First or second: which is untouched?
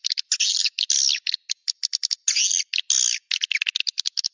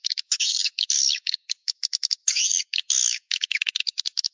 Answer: first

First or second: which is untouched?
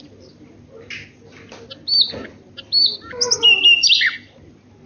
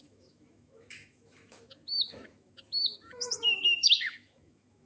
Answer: first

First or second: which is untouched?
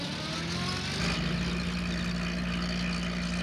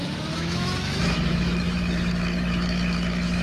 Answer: first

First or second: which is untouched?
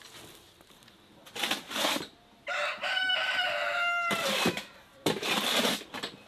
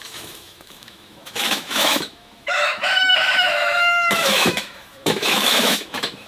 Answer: first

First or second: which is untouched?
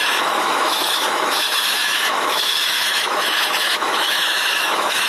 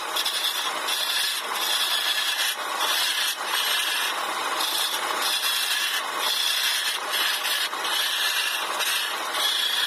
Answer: second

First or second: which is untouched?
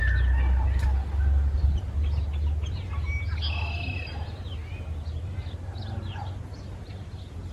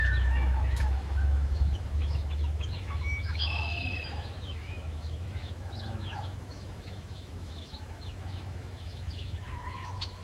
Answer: first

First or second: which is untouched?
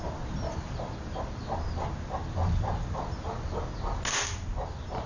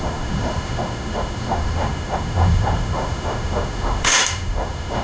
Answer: first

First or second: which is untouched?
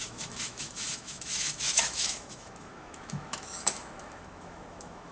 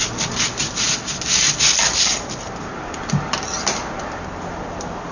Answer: second